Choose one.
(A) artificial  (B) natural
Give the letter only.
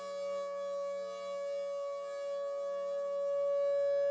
B